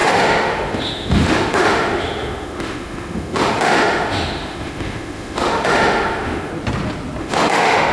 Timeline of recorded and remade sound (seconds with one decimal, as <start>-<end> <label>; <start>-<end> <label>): 0.0-6.5 remade; 6.5-7.2 recorded; 7.2-7.9 remade